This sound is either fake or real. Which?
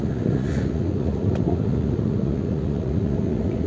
fake